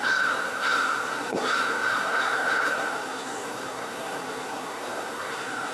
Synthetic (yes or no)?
yes